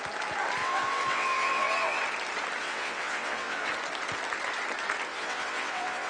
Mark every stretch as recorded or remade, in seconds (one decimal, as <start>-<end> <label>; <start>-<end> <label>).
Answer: 0.0-0.6 recorded; 0.6-2.0 remade; 2.0-2.6 recorded; 2.6-3.7 remade; 3.7-5.1 recorded; 5.1-6.1 remade